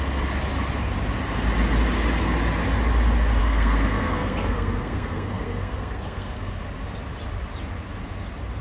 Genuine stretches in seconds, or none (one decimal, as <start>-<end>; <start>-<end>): 0.0-3.4; 6.5-8.6